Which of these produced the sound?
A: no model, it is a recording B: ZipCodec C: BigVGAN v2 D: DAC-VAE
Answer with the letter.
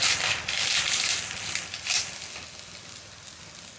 A